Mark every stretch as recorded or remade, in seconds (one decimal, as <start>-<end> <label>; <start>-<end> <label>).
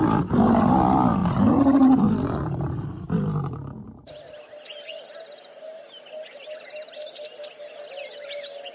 0.0-8.7 recorded